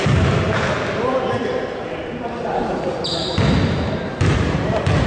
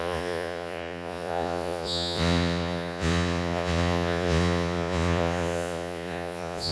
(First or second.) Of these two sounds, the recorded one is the first